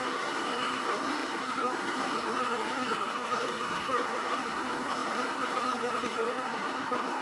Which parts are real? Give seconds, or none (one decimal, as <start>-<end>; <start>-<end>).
none